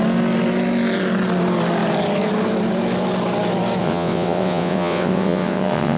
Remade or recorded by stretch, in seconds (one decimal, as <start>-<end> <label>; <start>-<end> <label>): 0.0-3.8 recorded; 3.8-6.0 remade